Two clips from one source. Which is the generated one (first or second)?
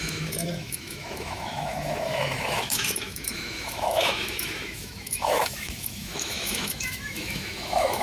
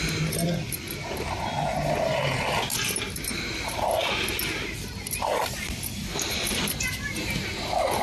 first